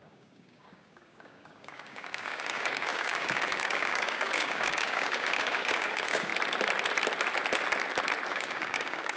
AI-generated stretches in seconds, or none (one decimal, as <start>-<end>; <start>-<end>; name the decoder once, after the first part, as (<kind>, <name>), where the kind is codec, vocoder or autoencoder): 0.0-6.3 (codec, DAC); 8.3-9.2